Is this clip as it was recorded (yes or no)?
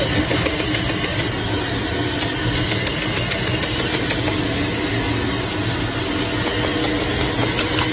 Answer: yes